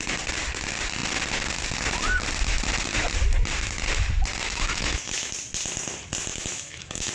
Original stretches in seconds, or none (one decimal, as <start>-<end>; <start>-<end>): 0.0-4.4; 5.3-6.3